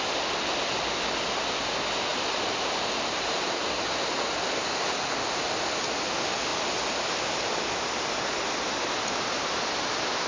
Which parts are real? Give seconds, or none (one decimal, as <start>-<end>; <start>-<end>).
0.0-2.1; 3.6-10.3